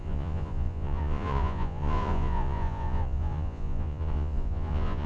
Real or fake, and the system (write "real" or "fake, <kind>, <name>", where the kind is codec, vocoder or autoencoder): fake, vocoder, Vocos